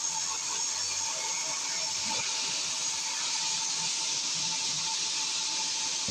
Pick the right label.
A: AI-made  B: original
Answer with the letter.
B